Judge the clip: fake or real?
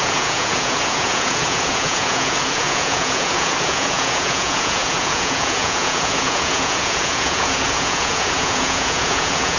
fake